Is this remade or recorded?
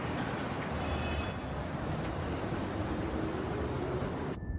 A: recorded